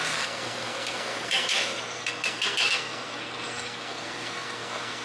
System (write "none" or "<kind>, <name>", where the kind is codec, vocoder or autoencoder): codec, SNAC